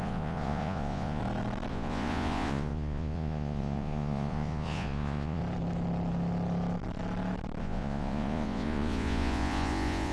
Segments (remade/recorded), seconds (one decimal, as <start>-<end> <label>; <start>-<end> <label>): 0.0-1.2 remade; 1.2-1.7 recorded; 1.7-5.4 remade; 5.4-7.6 recorded; 7.6-10.1 remade